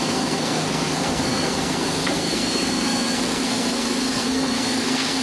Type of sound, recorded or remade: remade